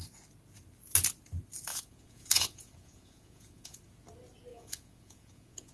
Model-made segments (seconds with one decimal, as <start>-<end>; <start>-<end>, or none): 1.7-3.8; 4.5-5.7

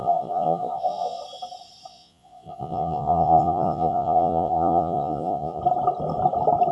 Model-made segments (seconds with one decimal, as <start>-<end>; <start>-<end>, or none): 0.0-1.2; 1.9-5.6

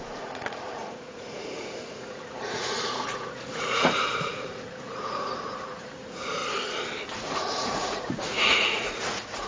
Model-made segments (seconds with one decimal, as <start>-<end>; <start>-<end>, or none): 0.0-6.4; 7.2-9.5

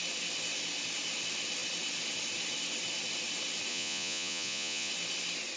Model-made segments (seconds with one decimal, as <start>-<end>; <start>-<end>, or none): 3.7-4.9

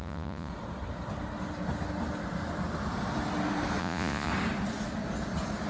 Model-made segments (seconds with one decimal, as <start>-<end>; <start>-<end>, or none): 0.0-0.5; 3.8-4.3

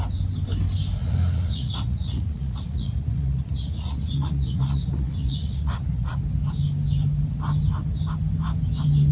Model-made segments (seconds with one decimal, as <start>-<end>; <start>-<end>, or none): 1.0-6.2